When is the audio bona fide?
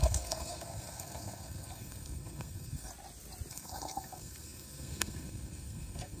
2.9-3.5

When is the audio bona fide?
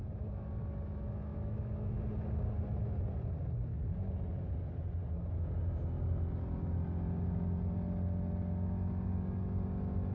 0.0-1.3; 1.9-10.1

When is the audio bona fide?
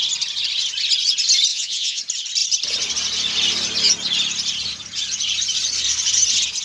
0.0-1.5; 2.0-6.6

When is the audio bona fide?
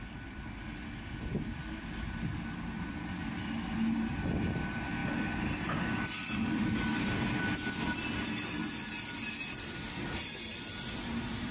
0.0-11.5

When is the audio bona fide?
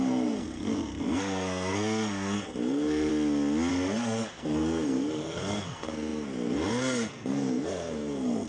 3.1-3.7